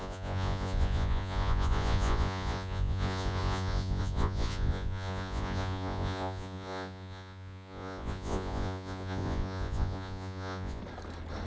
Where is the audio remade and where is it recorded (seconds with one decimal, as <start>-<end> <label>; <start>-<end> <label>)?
0.0-10.8 remade; 10.8-11.5 recorded